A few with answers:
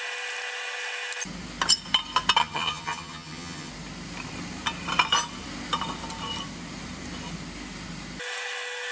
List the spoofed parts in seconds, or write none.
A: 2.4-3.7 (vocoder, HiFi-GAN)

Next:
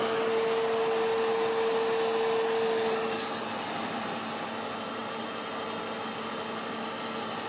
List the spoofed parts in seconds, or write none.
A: none

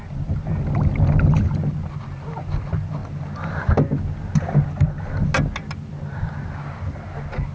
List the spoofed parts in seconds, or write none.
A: none

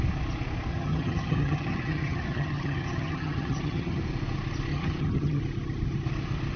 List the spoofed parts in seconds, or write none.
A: 0.7-4.0 (vocoder, HiFi-GAN); 4.7-5.4

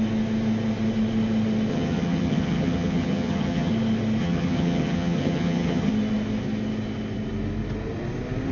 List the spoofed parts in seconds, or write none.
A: 1.7-3.7 (vocoder, HiFi-GAN); 4.2-5.9

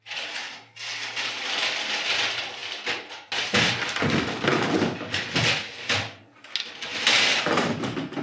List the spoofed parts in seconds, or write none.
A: none